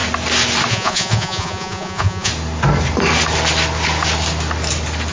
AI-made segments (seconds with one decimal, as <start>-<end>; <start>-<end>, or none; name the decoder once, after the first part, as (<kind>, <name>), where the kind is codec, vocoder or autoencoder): 0.7-2.3 (vocoder, Vocos)